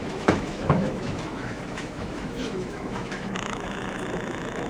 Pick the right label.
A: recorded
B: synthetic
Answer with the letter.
B